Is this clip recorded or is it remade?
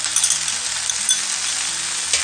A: recorded